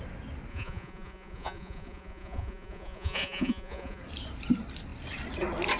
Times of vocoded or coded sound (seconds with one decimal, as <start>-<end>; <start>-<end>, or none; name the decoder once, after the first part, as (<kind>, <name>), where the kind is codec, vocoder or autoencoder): 0.5-4.0 (vocoder, Vocos)